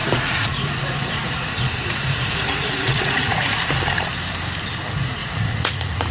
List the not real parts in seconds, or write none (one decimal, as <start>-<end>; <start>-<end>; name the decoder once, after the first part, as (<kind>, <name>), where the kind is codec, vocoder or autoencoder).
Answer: 0.0-3.7 (vocoder, Vocos); 5.2-6.1